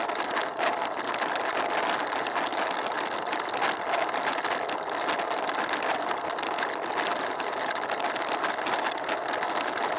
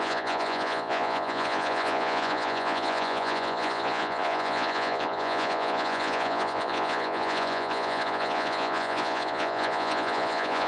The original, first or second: first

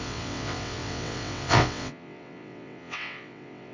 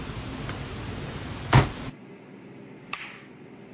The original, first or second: second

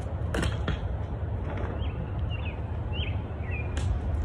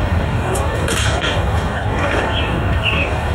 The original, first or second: first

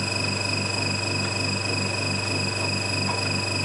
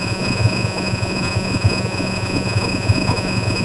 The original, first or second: first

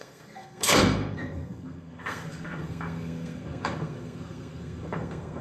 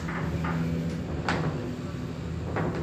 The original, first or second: second